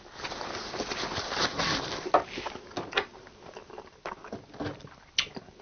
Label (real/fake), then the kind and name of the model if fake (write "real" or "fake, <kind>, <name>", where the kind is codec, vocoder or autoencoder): real